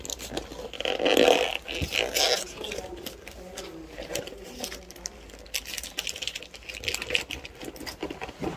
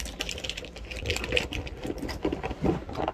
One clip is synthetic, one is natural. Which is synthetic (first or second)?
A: second